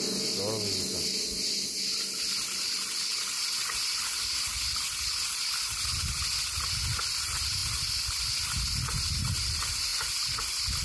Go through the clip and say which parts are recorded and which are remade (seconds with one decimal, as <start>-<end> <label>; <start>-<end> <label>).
0.0-10.8 recorded